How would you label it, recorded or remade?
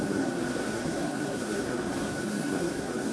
remade